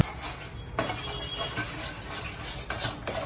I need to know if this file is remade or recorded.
recorded